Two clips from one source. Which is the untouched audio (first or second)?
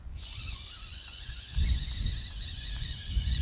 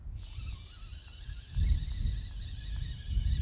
second